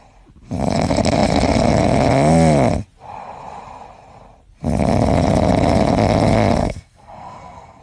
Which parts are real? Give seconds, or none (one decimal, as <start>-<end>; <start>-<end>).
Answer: 0.0-6.6